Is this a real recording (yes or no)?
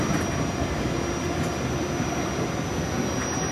yes